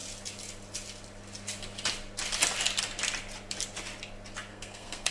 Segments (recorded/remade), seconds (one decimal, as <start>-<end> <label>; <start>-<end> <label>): 0.0-4.5 recorded; 4.5-5.1 remade